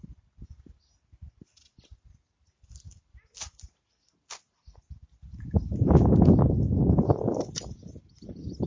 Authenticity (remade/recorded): recorded